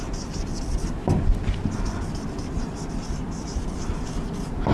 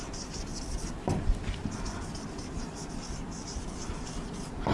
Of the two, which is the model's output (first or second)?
second